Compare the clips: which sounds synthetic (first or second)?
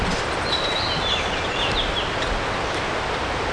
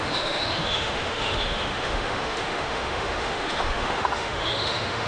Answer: second